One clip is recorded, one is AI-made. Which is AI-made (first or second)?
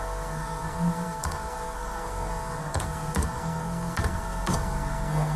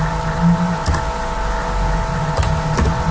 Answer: first